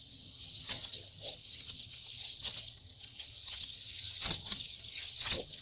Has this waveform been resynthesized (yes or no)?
yes